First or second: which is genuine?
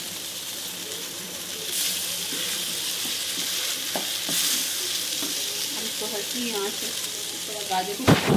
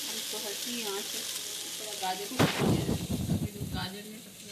second